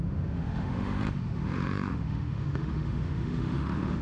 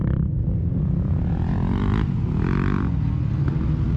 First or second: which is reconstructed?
first